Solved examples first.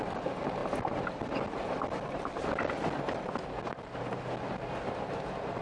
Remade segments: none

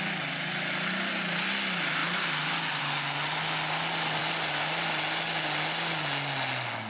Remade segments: none